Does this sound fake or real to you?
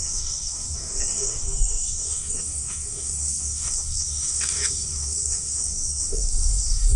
fake